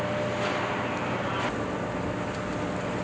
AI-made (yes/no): no